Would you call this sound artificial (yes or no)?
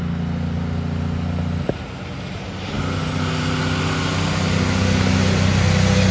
no